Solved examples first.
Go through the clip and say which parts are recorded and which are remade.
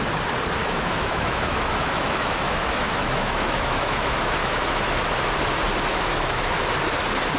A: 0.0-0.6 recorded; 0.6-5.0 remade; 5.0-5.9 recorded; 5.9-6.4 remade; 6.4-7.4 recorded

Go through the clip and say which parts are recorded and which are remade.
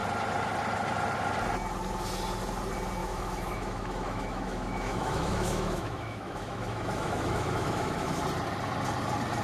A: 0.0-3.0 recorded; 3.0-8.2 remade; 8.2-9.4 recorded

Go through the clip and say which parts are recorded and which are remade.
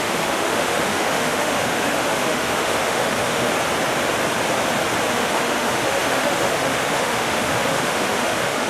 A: 0.0-3.5 remade; 3.5-5.1 recorded; 5.1-8.7 remade